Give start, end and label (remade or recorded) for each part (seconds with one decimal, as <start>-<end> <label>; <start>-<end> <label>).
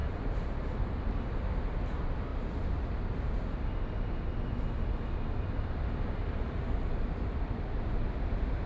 0.0-8.7 recorded